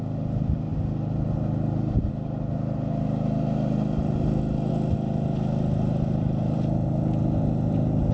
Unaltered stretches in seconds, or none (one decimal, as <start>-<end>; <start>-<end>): 0.0-8.1